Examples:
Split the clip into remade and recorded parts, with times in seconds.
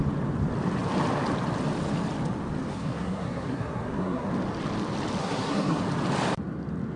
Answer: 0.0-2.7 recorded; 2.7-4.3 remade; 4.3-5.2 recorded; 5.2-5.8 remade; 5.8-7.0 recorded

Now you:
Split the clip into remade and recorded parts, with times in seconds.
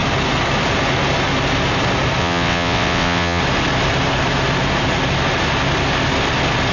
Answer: 0.0-2.2 recorded; 2.2-3.4 remade; 3.4-6.7 recorded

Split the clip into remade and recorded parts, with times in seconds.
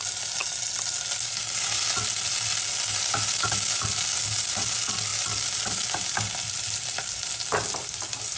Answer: 0.0-8.4 recorded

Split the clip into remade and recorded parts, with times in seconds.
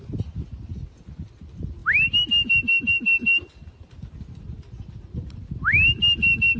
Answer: 0.0-6.6 recorded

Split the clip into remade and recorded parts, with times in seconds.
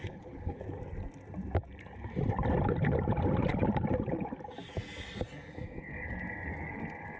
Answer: 0.0-0.6 remade; 0.6-7.2 recorded